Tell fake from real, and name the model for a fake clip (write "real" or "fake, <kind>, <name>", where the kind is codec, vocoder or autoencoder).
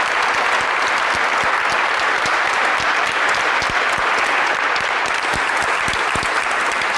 real